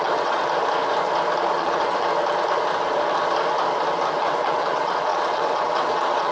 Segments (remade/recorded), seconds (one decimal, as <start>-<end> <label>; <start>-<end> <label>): 0.0-0.4 remade; 0.4-1.5 recorded; 1.5-2.1 remade; 2.1-4.1 recorded; 4.1-6.3 remade